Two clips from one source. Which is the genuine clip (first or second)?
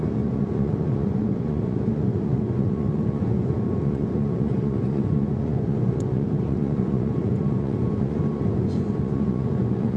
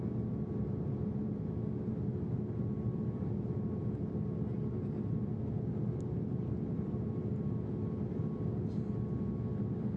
second